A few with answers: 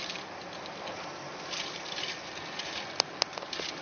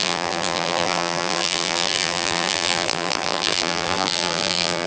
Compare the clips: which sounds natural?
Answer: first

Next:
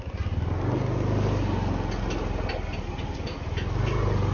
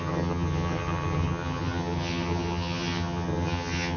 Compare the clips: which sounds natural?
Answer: first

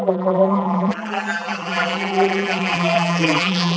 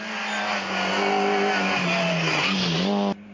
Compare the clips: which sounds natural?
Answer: second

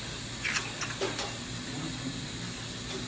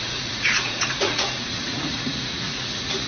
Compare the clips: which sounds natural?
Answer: first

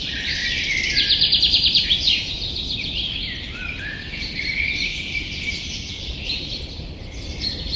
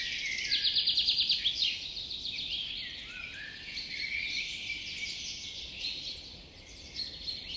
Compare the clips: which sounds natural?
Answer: second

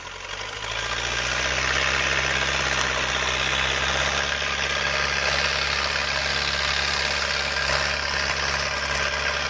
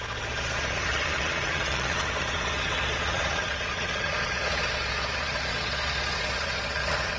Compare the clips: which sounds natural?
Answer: first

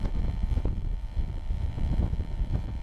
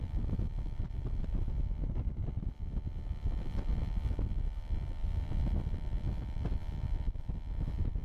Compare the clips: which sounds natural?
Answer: second